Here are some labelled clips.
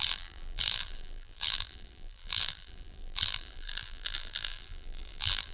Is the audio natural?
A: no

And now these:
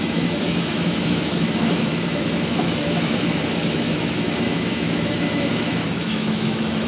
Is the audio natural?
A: no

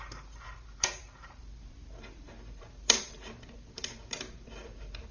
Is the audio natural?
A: no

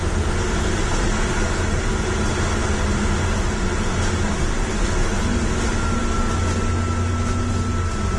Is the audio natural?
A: yes